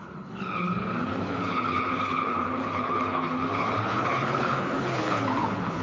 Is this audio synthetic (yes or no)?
yes